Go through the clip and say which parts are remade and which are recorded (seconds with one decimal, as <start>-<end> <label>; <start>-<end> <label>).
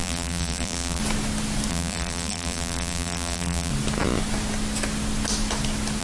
0.0-1.0 remade; 1.0-1.7 recorded; 1.7-3.7 remade; 3.7-6.0 recorded